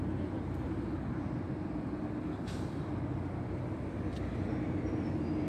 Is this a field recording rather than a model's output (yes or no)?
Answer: yes